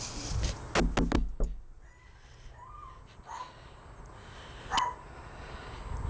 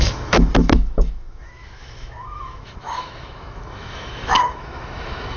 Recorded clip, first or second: first